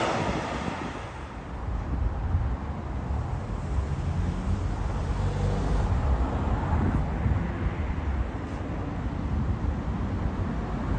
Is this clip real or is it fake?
real